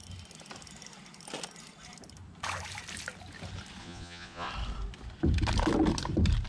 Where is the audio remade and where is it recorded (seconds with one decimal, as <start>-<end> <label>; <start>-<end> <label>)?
0.0-3.8 recorded; 3.8-4.5 remade; 4.5-6.5 recorded